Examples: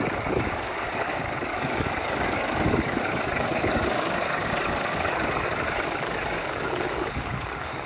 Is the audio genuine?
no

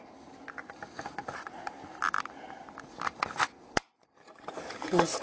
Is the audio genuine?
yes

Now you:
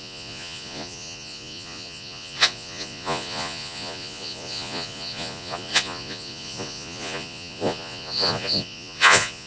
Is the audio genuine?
no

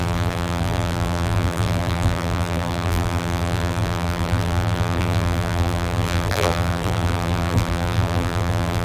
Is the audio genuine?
no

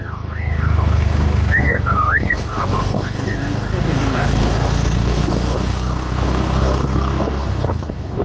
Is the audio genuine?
no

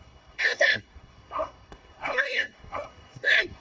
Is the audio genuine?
no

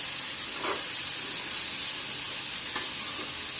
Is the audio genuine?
yes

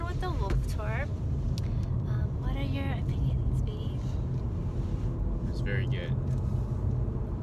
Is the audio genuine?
yes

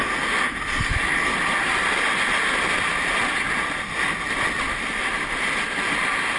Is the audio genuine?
yes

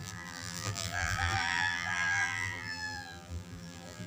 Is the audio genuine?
no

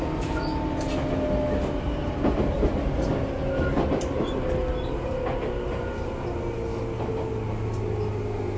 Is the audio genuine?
yes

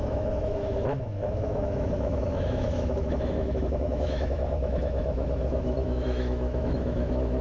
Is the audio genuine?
no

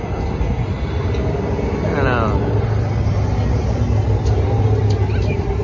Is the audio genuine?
yes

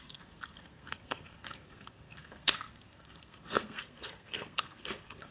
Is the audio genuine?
no